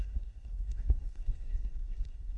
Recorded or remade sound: remade